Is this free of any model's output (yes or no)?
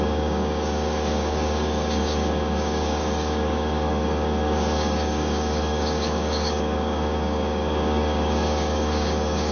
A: no